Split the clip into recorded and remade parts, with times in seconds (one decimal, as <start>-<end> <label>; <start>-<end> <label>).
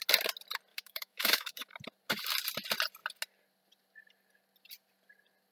0.0-0.7 recorded; 0.7-1.7 remade; 1.7-5.5 recorded